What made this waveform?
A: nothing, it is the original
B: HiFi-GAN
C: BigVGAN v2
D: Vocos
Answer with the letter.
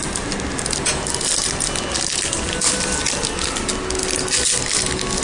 A